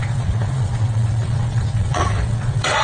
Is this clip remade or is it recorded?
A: remade